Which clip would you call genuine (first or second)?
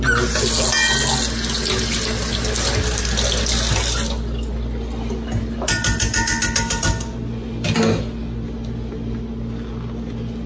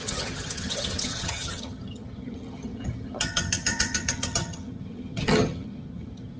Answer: first